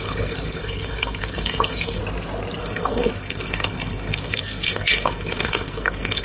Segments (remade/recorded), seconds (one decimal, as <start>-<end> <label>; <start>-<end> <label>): 0.0-2.0 remade; 2.0-2.6 recorded; 2.6-6.2 remade